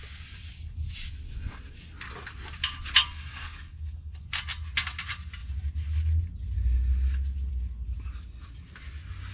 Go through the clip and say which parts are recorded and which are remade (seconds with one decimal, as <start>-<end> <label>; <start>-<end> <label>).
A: 0.0-3.0 recorded; 3.0-4.2 remade; 4.2-9.3 recorded